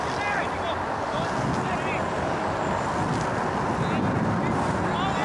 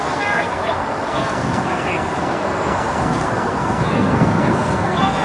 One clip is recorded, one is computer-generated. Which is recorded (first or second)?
first